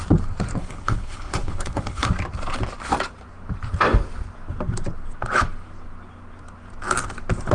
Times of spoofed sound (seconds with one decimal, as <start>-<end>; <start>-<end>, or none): 0.6-2.1

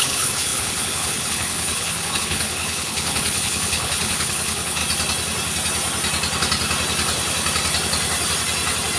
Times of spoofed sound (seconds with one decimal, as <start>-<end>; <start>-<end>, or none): 0.0-4.8

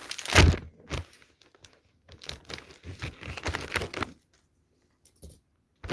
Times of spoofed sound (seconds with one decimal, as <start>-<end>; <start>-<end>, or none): none